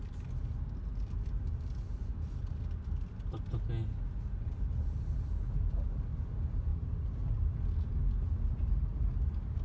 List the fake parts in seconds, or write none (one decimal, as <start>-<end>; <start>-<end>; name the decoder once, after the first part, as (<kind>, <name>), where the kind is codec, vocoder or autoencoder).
none

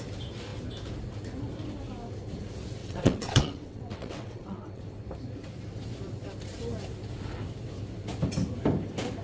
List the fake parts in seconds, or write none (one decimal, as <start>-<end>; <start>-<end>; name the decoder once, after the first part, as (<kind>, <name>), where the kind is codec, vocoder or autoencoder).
2.8-4.8 (vocoder, WaveNeXt)

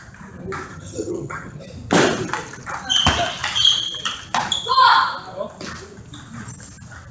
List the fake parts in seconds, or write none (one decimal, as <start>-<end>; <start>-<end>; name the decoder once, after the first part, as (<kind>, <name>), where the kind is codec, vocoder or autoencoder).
0.7-1.6 (vocoder, HiFi-GAN)

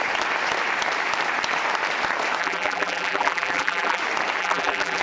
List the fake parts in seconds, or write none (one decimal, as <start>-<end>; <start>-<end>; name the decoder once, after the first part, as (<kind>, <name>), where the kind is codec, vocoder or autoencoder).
2.4-4.0 (vocoder, BigVGAN v2); 4.4-5.0

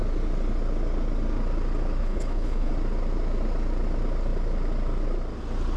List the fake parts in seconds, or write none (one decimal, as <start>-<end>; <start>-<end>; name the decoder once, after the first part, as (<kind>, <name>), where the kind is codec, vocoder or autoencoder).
2.0-2.7 (codec, HILCodec)

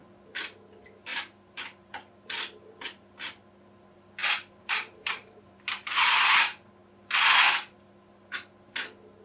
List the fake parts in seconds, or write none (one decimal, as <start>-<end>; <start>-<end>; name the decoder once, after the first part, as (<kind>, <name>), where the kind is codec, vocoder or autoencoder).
1.1-1.9 (vocoder, BigVGAN v2); 4.2-6.2

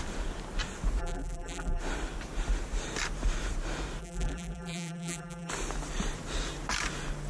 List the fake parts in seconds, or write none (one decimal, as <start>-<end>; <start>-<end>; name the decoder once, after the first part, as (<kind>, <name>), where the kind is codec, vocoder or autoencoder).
1.0-1.8 (vocoder, BigVGAN v2); 4.0-5.5